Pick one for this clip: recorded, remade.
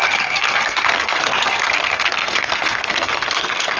remade